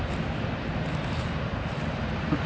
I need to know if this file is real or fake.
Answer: real